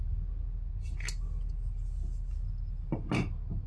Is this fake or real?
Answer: real